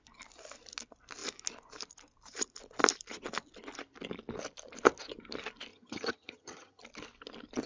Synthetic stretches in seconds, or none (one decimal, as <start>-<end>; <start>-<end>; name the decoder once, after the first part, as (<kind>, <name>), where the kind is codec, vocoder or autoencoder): 5.7-6.8 (vocoder, HiFi-GAN)